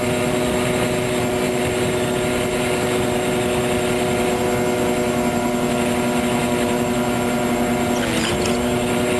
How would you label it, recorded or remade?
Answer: recorded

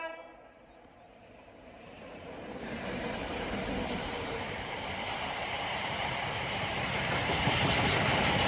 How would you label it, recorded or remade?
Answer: remade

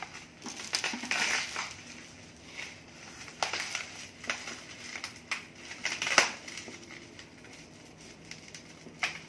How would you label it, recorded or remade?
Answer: remade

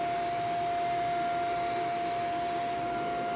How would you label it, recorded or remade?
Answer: recorded